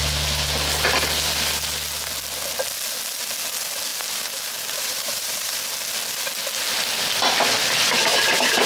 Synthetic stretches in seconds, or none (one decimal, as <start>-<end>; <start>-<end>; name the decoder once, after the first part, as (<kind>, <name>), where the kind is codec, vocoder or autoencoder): 3.9-5.6 (vocoder, BigVGAN v2); 8.1-8.7